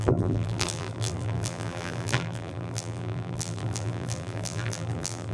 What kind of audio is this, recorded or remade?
remade